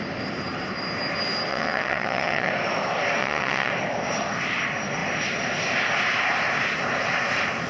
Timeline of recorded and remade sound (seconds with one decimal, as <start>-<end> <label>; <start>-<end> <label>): 0.0-1.5 recorded; 1.5-2.5 remade; 2.5-3.2 recorded; 3.2-3.7 remade; 3.7-7.7 recorded